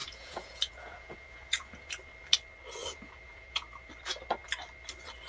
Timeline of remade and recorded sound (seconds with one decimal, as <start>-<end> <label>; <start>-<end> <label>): 0.0-1.9 remade; 1.9-2.8 recorded; 2.8-3.9 remade; 3.9-5.3 recorded